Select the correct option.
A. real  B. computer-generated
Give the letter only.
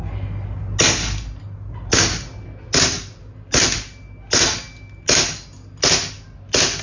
A